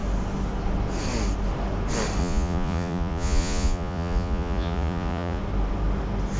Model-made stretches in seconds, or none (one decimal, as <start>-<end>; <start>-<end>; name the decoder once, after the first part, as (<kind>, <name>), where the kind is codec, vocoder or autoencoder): 2.2-5.4 (vocoder, Vocos)

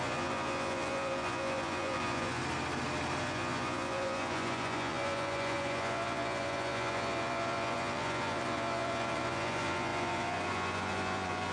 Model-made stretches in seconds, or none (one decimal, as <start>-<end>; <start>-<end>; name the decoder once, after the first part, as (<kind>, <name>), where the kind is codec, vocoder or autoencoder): 0.0-2.4 (vocoder, Vocos); 3.2-11.5

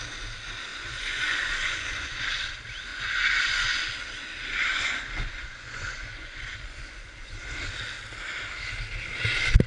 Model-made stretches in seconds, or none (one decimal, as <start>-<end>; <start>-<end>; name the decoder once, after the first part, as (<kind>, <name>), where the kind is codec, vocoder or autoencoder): 0.7-2.2 (vocoder, Vocos); 2.9-3.8; 4.7-7.4

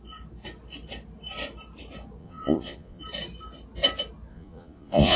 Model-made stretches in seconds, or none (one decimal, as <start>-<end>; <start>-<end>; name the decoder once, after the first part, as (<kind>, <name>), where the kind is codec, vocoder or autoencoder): 2.2-3.0 (vocoder, Vocos); 4.3-5.2